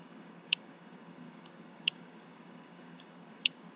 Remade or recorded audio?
remade